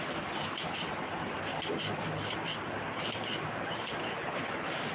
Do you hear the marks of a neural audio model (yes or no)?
no